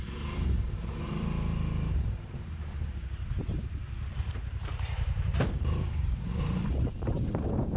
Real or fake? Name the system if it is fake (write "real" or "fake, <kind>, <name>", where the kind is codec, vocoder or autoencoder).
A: fake, vocoder, BigVGAN v2